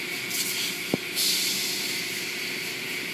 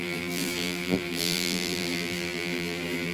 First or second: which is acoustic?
first